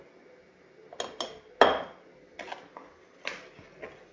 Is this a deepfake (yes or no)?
no